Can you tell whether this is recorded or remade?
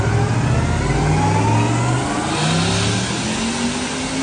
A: recorded